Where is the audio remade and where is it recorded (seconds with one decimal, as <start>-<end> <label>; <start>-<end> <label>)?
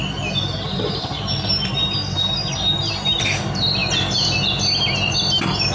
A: 0.0-5.7 recorded